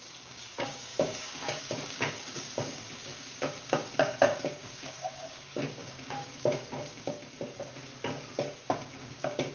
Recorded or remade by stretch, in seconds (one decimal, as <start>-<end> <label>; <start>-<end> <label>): 0.0-7.2 remade; 7.2-8.3 recorded; 8.3-9.5 remade